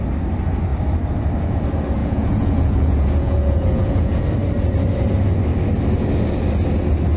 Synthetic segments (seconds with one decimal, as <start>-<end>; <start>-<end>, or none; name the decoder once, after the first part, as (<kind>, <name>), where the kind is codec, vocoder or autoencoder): 2.0-4.2 (vocoder, Vocos)